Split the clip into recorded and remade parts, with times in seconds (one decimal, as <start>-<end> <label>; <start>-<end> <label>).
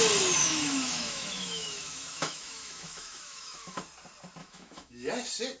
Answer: 0.0-0.4 recorded; 0.4-3.8 remade; 3.8-4.4 recorded; 4.4-5.1 remade; 5.1-5.6 recorded